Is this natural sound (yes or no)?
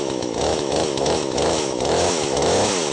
no